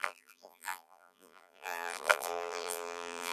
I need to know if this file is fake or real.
fake